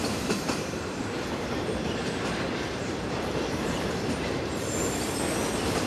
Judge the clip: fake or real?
fake